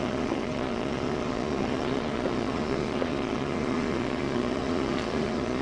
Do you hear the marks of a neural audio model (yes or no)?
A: yes